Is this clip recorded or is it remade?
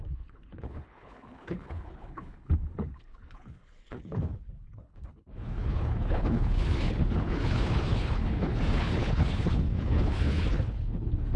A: remade